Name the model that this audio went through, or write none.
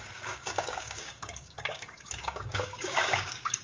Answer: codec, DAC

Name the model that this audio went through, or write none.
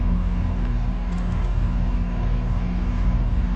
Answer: codec, DAC